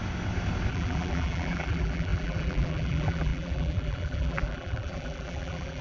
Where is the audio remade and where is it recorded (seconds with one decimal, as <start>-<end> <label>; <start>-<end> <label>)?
0.0-0.7 recorded; 0.7-5.8 remade